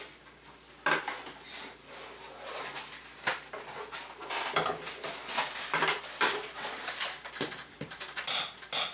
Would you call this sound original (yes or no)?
yes